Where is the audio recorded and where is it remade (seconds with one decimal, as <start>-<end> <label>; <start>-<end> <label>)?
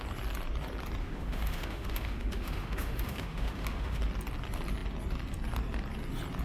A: 0.0-1.0 recorded; 1.0-4.0 remade; 4.0-6.4 recorded